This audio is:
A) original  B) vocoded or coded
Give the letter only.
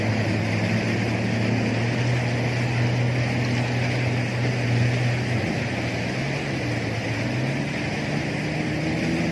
A